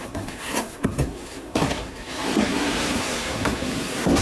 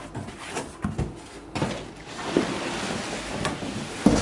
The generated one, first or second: first